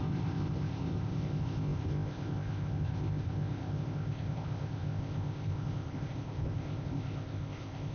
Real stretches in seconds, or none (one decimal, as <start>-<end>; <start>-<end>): none